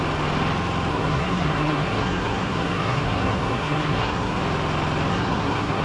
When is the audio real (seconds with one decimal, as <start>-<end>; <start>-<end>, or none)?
0.0-0.9; 4.4-5.1